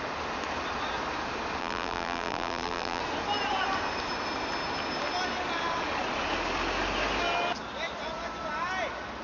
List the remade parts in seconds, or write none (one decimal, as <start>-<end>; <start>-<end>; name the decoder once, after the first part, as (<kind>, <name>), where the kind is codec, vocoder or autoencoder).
1.6-3.0 (vocoder, BigVGAN v2)